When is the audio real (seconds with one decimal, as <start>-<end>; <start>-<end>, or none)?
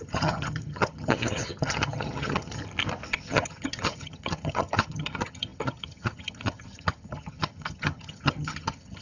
2.6-3.1